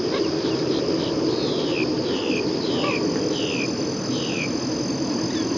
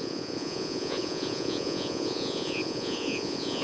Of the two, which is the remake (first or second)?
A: second